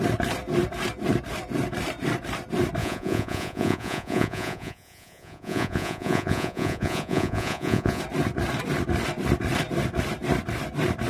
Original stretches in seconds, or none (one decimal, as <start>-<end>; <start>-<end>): 0.0-2.8; 8.0-11.1